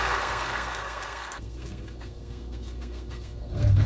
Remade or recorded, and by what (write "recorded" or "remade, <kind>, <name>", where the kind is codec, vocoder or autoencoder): remade, codec, SNAC